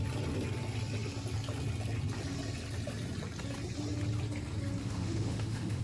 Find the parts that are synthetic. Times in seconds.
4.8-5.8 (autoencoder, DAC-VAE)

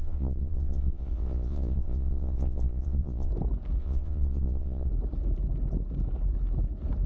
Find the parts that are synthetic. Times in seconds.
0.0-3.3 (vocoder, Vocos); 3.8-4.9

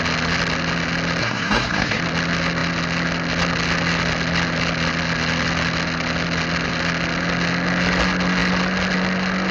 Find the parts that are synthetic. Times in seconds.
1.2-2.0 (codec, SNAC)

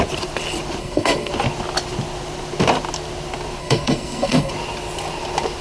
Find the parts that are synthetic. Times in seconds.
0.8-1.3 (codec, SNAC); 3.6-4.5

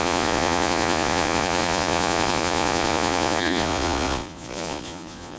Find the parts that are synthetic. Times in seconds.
0.0-5.4 (vocoder, Vocos)